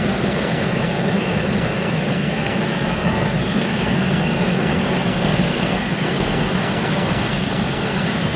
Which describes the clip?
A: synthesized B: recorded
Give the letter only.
A